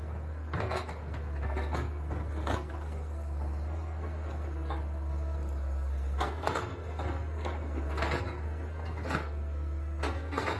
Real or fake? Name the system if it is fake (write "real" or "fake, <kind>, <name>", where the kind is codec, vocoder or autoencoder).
fake, codec, SNAC